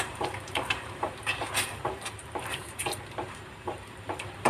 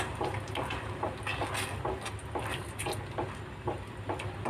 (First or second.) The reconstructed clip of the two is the first